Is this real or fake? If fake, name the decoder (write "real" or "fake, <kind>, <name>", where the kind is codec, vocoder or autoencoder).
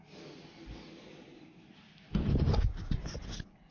real